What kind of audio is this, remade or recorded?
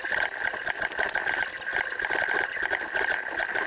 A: recorded